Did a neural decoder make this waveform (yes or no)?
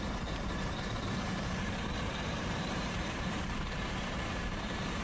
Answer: yes